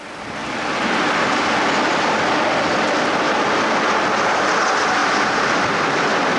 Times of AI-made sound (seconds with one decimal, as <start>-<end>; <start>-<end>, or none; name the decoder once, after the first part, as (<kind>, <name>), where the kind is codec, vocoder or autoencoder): 0.0-0.4 (vocoder, BigVGAN v2); 4.0-5.0; 5.6-6.4

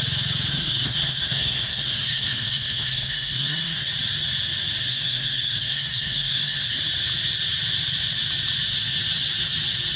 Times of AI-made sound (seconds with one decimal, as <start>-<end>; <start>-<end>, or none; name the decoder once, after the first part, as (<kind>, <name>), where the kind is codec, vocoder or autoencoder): 0.5-3.9 (codec, SNAC); 4.9-6.8

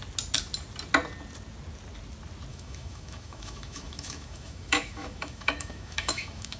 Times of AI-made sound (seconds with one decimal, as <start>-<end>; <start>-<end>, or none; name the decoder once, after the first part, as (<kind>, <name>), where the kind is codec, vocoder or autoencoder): 2.5-6.6 (autoencoder, DAC-VAE)

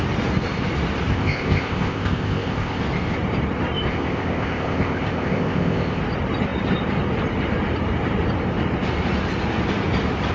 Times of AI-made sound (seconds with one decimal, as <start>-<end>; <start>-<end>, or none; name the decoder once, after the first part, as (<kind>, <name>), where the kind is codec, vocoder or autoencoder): 1.1-2.8 (codec, ZipCodec); 3.9-6.0

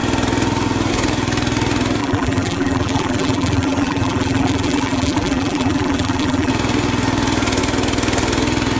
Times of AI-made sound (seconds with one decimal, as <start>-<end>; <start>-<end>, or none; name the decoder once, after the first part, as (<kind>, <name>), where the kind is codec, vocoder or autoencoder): 2.0-6.5 (vocoder, BigVGAN v2)

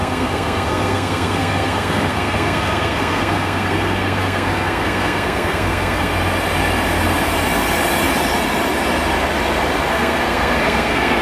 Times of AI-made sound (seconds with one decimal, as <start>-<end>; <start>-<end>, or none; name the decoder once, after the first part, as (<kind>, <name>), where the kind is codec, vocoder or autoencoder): 0.0-6.1 (codec, SNAC); 9.9-11.2

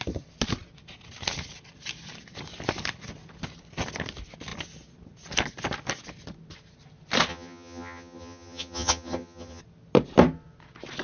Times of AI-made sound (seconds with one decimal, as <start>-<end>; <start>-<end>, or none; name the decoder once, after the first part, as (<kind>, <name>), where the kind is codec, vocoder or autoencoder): 7.3-9.6 (vocoder, HiFi-GAN)

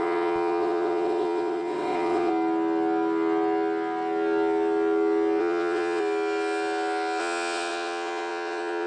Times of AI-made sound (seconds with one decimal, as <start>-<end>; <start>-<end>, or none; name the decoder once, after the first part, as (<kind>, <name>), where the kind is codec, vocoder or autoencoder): 0.0-2.3 (vocoder, WaveNeXt); 5.4-6.0; 7.2-8.9